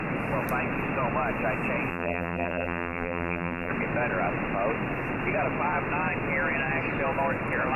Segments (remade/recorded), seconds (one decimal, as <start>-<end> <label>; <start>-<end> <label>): 0.0-1.9 recorded; 1.9-3.7 remade; 3.7-7.8 recorded